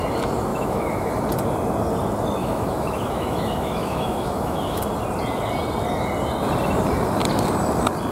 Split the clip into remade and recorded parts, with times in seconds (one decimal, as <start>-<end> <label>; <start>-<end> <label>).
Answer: 0.0-0.5 recorded; 0.5-1.2 remade; 1.2-2.4 recorded; 2.4-4.8 remade; 4.8-8.1 recorded